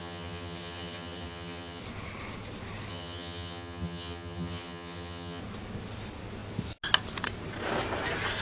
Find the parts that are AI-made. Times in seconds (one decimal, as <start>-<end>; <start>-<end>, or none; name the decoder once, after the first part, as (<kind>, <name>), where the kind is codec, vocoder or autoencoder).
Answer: 0.0-1.8 (vocoder, HiFi-GAN); 2.9-5.4